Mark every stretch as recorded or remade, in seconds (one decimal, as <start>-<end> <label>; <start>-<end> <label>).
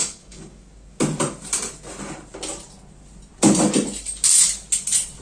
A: 0.0-1.0 remade; 1.0-5.2 recorded